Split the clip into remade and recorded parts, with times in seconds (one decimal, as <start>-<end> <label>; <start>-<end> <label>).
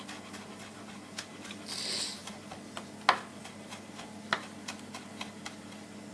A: 0.0-6.1 recorded